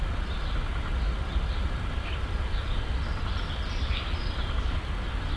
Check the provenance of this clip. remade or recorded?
recorded